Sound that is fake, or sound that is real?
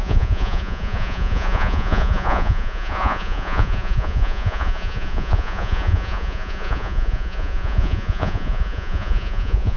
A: fake